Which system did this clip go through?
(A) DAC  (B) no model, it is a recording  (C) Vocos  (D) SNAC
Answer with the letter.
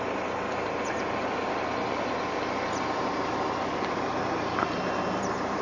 B